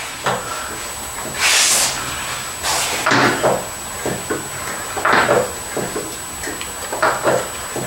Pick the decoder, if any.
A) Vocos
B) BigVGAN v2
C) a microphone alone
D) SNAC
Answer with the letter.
C